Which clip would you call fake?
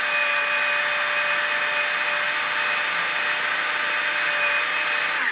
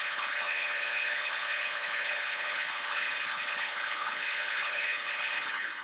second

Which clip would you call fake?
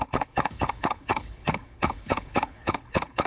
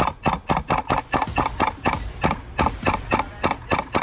first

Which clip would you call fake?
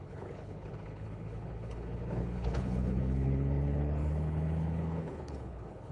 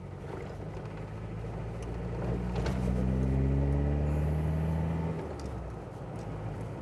first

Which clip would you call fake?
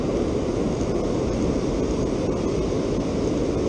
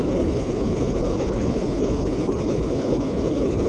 second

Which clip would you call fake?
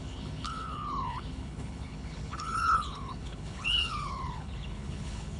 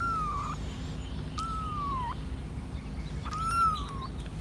first